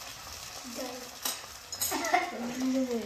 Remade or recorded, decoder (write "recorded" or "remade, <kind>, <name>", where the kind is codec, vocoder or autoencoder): recorded